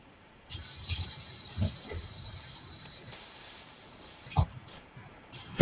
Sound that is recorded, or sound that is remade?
remade